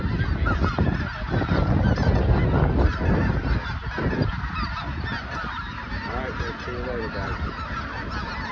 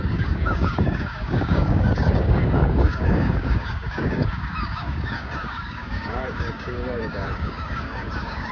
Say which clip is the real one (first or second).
first